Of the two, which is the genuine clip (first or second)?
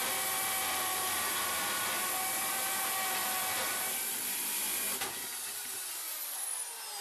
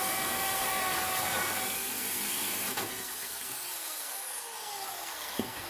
first